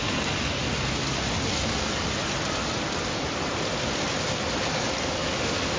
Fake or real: real